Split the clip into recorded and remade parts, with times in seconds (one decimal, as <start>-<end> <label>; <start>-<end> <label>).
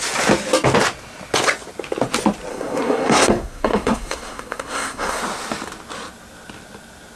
0.0-2.5 recorded; 2.5-5.2 remade; 5.2-7.2 recorded